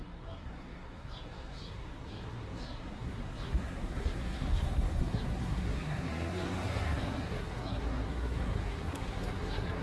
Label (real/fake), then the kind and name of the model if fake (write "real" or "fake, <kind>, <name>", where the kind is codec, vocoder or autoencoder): fake, codec, SNAC